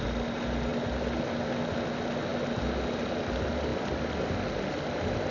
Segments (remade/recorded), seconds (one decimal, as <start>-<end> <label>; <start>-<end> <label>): 0.0-5.3 recorded